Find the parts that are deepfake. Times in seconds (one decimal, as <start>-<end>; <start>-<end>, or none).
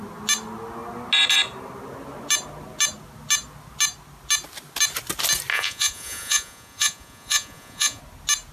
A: 5.5-8.0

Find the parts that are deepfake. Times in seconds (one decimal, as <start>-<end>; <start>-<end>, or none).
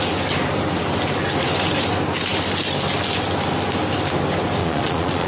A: 4.6-5.3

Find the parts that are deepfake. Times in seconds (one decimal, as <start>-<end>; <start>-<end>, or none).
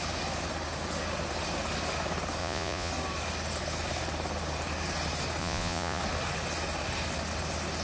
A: 2.4-2.9; 5.4-6.0